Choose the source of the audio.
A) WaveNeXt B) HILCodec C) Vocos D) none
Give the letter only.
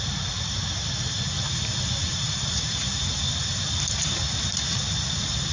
D